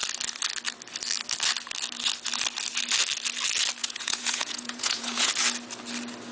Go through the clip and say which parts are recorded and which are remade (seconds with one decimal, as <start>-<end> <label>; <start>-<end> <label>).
0.0-3.8 recorded; 3.8-5.3 remade; 5.3-6.3 recorded